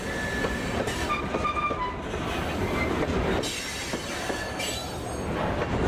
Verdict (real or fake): real